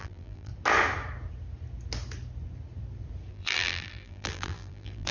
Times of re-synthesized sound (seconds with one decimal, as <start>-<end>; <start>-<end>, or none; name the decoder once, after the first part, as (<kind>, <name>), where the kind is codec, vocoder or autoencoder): 0.0-0.5 (vocoder, BigVGAN v2); 3.3-5.1